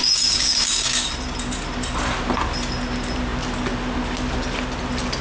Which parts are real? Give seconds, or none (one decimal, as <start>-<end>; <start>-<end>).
1.1-5.2